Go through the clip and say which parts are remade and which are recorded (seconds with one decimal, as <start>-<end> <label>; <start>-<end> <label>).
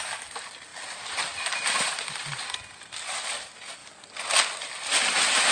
0.0-5.5 recorded